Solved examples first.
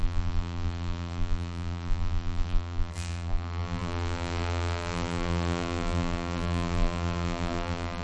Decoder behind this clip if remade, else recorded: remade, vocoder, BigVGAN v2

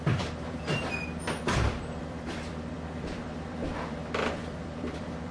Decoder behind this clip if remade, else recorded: remade, vocoder, BigVGAN v2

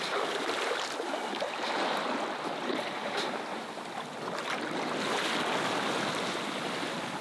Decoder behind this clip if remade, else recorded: recorded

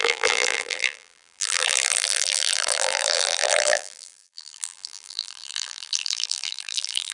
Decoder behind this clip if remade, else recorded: remade, vocoder, BigVGAN v2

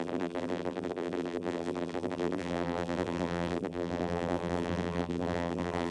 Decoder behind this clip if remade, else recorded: remade, vocoder, BigVGAN v2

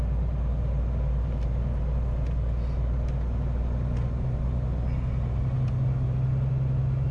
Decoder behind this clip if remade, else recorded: recorded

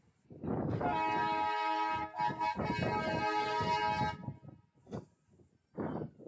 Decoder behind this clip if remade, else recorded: recorded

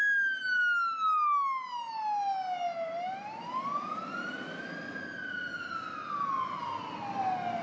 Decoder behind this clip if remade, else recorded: recorded